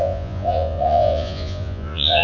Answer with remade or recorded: remade